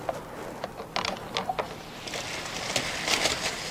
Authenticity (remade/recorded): recorded